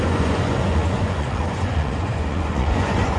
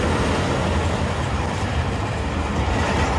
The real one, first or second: second